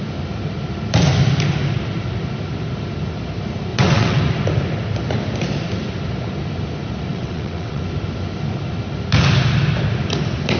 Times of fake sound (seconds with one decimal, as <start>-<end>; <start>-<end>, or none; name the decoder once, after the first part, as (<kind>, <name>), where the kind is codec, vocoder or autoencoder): 3.7-4.2 (vocoder, WaveNeXt); 7.1-7.8